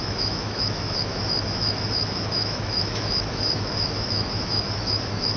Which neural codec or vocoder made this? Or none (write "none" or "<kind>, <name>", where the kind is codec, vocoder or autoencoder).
autoencoder, DAC-VAE